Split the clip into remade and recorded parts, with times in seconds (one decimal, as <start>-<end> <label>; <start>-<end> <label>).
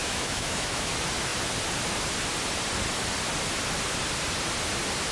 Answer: 0.0-0.9 remade; 0.9-5.1 recorded